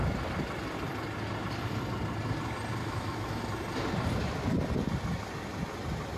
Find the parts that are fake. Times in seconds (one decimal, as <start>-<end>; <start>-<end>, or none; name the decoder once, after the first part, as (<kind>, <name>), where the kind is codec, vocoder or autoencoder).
2.8-3.4 (autoencoder, DAC-VAE)